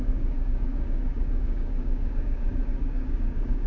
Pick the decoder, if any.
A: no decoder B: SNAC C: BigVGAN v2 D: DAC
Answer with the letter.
D